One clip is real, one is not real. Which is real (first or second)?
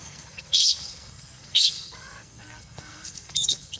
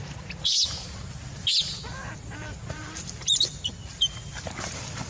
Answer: second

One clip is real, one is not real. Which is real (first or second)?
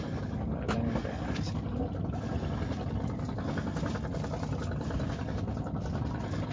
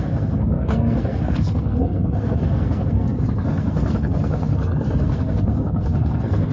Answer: first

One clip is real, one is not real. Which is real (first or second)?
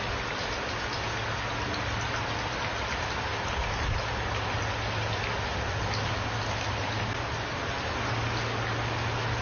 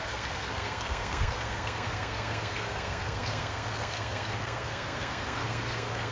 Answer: first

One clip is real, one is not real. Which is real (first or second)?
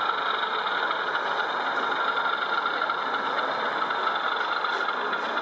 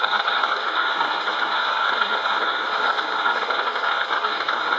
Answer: first